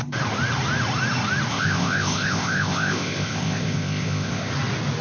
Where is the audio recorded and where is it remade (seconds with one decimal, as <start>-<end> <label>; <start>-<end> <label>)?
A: 0.0-1.5 recorded; 1.5-4.5 remade; 4.5-5.0 recorded